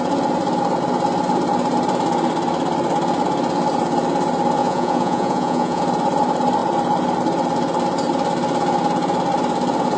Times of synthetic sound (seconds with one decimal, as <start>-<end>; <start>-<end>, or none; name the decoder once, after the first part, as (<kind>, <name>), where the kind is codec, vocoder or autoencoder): 4.6-5.8 (vocoder, Vocos)